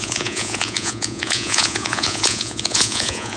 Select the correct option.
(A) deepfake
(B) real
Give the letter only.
A